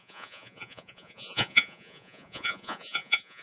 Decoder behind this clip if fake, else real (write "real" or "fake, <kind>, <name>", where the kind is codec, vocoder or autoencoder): fake, vocoder, Vocos